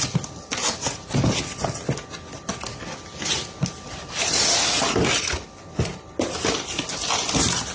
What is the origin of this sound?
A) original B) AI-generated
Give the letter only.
A